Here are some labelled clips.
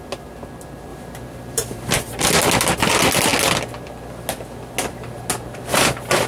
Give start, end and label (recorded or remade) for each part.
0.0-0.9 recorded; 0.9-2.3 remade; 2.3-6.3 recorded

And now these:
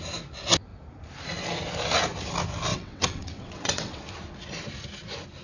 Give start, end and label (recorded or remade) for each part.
0.0-2.7 recorded; 2.7-4.0 remade; 4.0-5.4 recorded

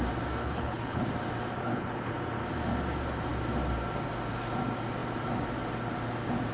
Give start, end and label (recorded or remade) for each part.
0.0-0.4 recorded; 0.4-1.1 remade; 1.1-1.6 recorded; 1.6-2.1 remade; 2.1-6.5 recorded